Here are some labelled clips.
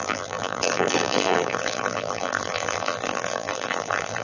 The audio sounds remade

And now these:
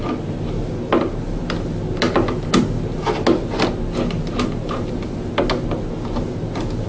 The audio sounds recorded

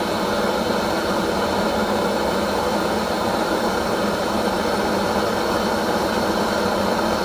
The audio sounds recorded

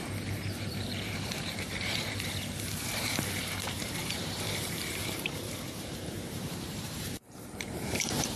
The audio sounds remade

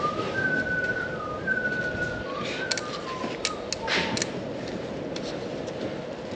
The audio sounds recorded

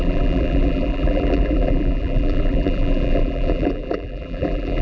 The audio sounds remade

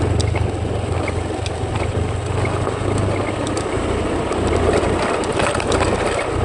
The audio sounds recorded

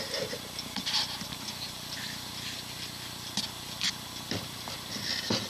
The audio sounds recorded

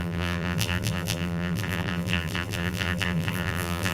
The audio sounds remade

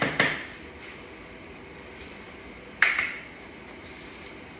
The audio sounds recorded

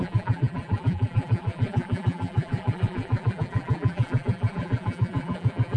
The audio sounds remade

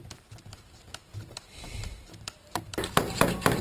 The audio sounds remade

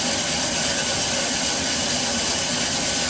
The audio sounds recorded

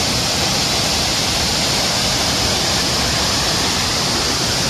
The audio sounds recorded